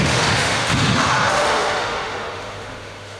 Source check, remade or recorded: remade